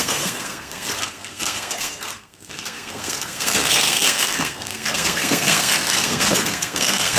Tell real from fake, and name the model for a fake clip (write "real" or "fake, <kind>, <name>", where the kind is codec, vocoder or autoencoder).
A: fake, codec, SNAC